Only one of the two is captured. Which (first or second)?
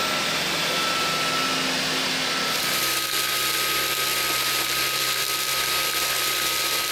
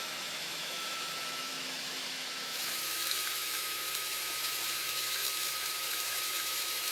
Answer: first